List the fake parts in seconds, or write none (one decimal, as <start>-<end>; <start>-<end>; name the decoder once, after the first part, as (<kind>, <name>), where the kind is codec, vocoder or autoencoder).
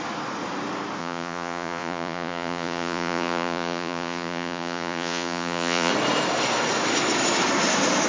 1.0-5.9 (vocoder, Vocos)